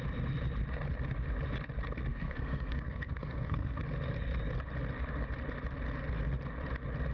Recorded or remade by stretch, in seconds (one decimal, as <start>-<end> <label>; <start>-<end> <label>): 0.0-2.1 recorded; 2.1-3.8 remade; 3.8-7.1 recorded